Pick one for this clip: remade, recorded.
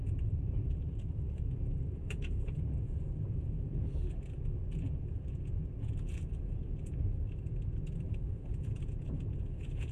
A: remade